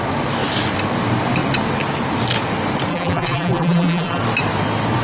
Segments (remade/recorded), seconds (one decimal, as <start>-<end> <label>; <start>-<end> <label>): 0.0-2.9 recorded; 2.9-4.2 remade; 4.2-5.0 recorded